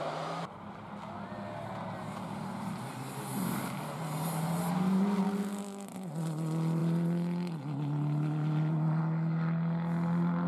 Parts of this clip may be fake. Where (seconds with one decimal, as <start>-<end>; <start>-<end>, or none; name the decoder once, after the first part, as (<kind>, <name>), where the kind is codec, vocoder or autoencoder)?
none